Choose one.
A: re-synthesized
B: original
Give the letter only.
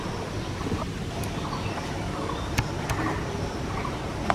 B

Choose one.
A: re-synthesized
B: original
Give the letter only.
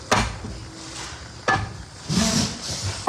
B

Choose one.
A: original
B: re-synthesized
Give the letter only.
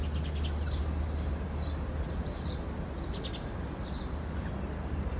A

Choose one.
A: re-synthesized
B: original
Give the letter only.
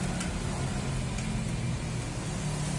B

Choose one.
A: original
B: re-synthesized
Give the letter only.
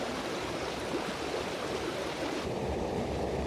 B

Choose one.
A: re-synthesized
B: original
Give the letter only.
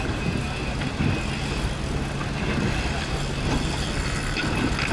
B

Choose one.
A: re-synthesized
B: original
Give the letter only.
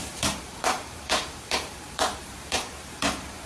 A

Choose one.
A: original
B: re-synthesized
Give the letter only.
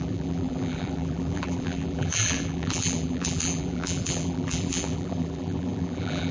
B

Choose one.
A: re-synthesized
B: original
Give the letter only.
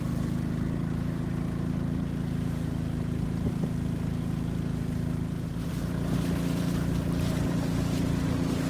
B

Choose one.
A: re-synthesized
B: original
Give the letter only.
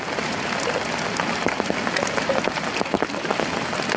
B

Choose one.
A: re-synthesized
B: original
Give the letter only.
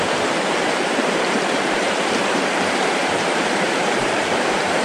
A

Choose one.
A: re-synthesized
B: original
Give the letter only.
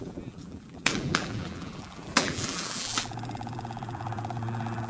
A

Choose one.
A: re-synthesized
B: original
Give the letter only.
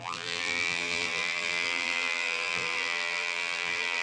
A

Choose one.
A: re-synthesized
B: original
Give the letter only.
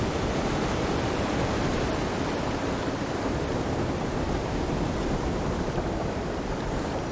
A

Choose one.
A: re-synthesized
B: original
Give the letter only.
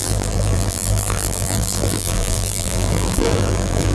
A